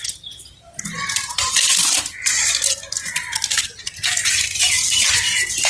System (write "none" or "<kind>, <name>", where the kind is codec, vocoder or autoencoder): none